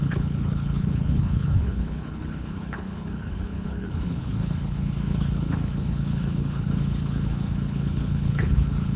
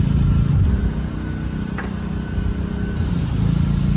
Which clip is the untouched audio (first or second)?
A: second